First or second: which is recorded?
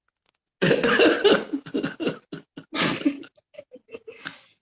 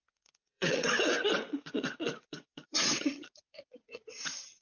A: first